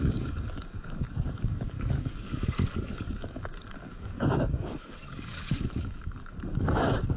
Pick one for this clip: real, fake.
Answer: fake